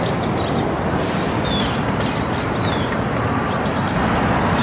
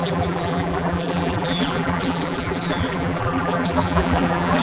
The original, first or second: first